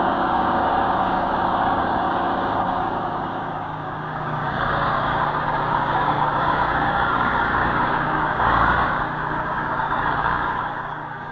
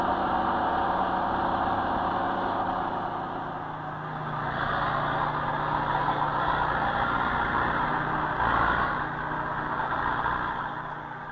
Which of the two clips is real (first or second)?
second